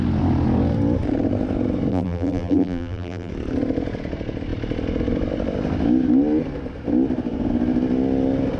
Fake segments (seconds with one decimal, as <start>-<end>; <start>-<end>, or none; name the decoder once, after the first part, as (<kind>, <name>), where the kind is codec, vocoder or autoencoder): 1.9-3.3 (vocoder, BigVGAN v2)